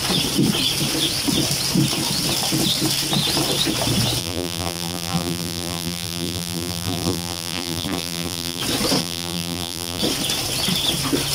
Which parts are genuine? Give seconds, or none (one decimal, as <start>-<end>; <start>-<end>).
0.0-4.2; 8.6-9.0; 10.0-11.3